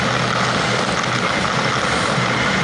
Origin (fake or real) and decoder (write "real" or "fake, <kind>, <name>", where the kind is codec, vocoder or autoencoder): real